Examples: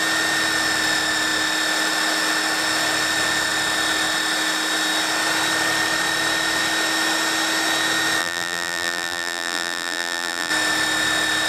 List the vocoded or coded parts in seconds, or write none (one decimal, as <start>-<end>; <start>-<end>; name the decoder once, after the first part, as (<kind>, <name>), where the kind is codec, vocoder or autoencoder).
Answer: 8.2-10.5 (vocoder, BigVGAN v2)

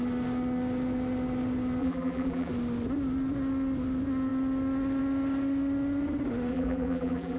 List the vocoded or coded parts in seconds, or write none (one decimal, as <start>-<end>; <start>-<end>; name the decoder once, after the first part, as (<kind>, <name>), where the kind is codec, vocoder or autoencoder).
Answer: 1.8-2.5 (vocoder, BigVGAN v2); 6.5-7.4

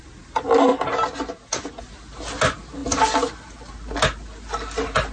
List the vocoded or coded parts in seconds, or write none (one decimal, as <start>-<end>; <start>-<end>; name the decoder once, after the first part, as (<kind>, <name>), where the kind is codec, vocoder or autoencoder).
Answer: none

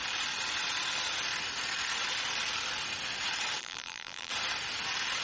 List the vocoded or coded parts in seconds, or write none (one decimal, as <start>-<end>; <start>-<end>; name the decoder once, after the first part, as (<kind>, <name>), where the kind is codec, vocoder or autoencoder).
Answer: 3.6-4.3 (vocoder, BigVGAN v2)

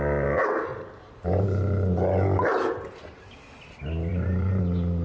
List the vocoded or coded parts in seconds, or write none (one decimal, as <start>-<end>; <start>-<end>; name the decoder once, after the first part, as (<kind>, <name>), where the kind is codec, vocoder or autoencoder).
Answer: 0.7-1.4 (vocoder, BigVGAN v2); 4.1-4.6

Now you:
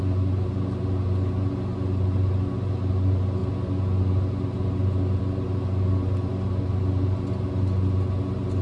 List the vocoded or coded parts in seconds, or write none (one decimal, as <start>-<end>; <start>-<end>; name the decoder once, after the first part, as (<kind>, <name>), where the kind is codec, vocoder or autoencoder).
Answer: none

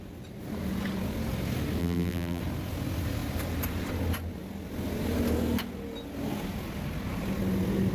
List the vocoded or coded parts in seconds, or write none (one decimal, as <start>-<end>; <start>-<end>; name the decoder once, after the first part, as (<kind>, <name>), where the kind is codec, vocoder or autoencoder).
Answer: 1.8-2.4 (vocoder, BigVGAN v2)